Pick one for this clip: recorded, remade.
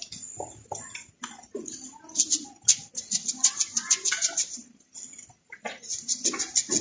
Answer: recorded